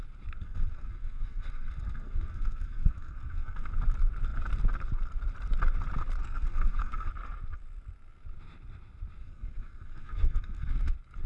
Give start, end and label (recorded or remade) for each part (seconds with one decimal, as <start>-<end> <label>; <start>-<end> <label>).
0.0-0.4 recorded; 0.4-3.7 remade; 3.7-6.2 recorded; 6.2-7.1 remade; 7.1-9.2 recorded; 9.2-10.9 remade; 10.9-11.3 recorded